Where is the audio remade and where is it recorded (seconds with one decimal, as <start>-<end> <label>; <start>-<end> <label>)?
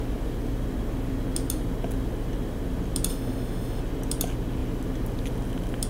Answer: 0.0-3.1 recorded; 3.1-3.8 remade; 3.8-5.9 recorded